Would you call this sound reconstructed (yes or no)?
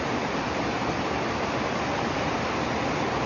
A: no